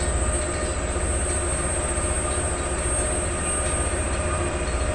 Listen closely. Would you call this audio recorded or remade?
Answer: recorded